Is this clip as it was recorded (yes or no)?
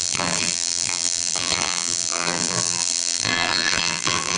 no